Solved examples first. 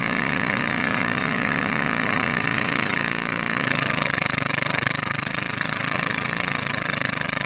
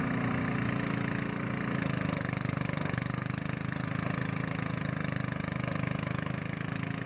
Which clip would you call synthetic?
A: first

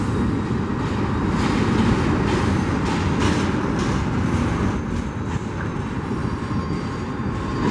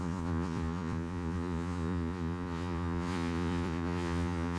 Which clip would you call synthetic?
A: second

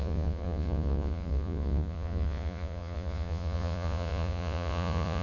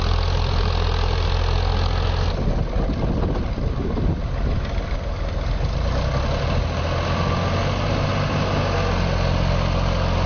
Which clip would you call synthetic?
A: first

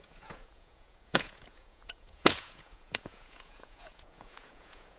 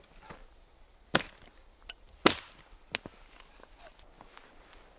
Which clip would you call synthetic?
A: first